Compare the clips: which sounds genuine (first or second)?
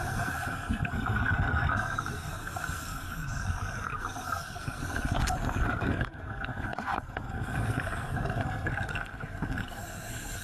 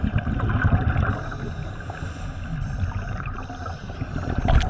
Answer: second